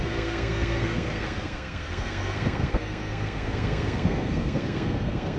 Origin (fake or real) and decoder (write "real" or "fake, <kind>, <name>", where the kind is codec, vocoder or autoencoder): fake, codec, SNAC